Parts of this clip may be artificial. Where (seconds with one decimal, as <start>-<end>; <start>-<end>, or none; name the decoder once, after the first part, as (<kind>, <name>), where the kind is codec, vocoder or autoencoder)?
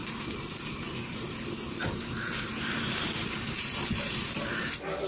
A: 1.0-4.1 (vocoder, BigVGAN v2)